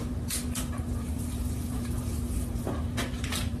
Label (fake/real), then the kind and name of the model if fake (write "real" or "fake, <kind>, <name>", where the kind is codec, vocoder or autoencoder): fake, vocoder, BigVGAN v2